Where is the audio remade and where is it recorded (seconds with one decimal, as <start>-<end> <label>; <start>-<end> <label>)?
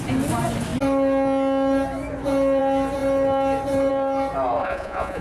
0.0-4.6 recorded; 4.6-5.2 remade